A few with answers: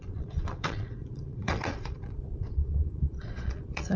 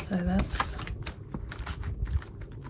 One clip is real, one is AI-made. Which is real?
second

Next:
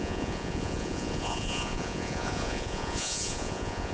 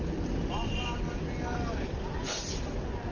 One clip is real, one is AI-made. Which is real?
second